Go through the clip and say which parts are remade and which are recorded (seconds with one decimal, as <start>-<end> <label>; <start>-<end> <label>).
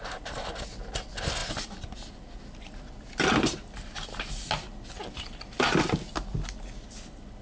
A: 0.0-7.4 recorded